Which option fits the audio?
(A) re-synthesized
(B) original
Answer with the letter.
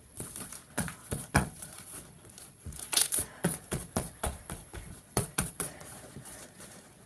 A